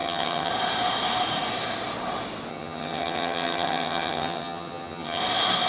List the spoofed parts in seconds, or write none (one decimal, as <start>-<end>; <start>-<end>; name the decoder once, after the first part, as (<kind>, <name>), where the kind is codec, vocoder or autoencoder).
0.0-0.5 (vocoder, HiFi-GAN); 2.5-5.2